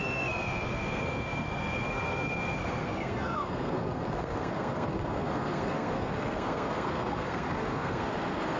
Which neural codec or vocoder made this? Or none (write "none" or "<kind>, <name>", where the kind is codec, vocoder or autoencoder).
codec, SNAC